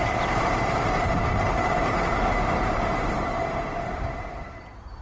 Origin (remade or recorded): remade